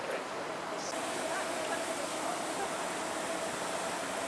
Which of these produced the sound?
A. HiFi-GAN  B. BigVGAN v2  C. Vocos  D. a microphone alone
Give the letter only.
D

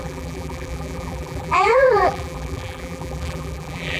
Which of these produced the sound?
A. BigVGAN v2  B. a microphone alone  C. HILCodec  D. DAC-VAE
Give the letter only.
A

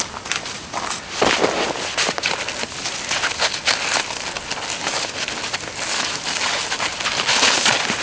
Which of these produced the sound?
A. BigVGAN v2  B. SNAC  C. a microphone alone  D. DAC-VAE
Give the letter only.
C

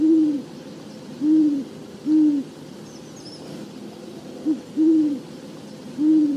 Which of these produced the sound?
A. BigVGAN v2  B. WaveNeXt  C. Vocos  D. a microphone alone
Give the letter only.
D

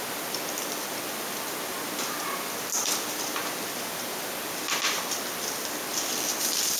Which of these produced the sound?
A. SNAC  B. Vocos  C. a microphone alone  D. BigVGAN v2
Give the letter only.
C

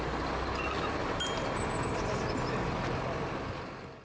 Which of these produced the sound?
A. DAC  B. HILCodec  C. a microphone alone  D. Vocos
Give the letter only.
C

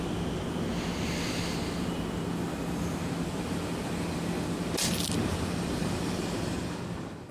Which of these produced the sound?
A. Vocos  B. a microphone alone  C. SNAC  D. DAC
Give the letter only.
B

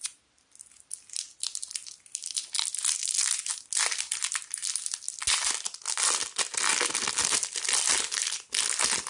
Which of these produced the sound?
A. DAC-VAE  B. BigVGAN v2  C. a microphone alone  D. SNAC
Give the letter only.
C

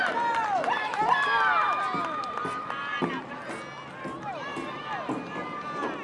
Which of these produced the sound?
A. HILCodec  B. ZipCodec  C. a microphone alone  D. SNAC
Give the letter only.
C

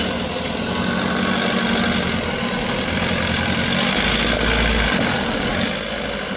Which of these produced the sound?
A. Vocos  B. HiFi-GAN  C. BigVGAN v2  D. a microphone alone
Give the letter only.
D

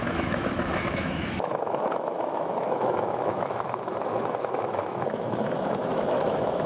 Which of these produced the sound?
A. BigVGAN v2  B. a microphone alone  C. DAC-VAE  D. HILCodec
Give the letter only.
C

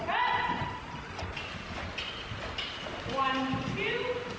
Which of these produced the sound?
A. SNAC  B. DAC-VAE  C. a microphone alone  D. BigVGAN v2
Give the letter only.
C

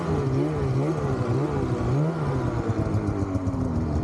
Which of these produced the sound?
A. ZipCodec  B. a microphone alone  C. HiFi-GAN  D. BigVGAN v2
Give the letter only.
B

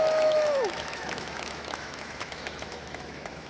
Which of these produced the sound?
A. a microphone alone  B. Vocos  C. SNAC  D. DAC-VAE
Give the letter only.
D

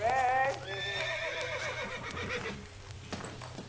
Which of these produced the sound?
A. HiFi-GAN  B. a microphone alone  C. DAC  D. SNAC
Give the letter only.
B